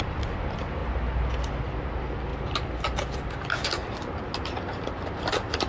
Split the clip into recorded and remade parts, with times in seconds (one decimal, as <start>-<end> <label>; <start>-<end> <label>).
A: 0.0-5.7 recorded